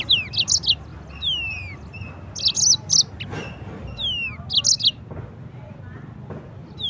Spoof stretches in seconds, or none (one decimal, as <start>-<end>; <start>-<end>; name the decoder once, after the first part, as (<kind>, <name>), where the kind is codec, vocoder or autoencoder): none